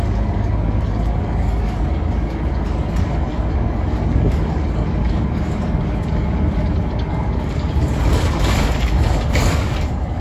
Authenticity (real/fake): fake